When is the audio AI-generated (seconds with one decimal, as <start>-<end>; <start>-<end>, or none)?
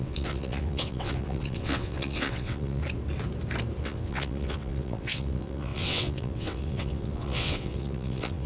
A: 0.0-2.8; 3.8-8.5